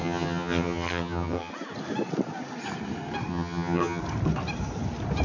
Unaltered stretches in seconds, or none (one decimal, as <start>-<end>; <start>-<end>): 1.5-3.3; 4.0-5.2